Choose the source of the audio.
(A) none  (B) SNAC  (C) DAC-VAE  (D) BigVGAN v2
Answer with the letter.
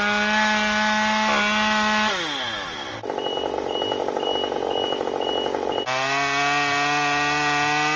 A